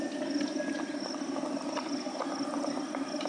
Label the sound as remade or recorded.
recorded